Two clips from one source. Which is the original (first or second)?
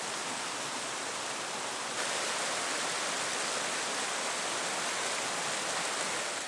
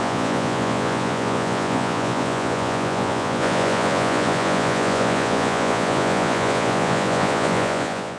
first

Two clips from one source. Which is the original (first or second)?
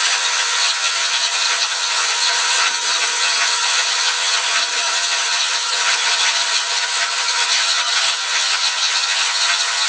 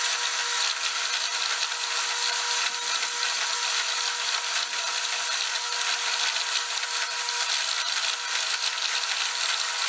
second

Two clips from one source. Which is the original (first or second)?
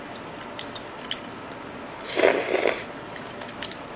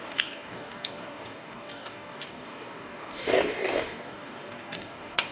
first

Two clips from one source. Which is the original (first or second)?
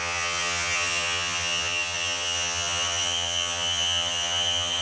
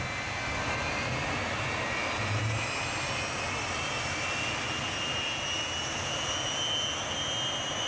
second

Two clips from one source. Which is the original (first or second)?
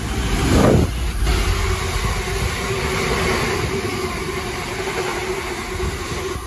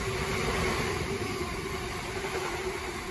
first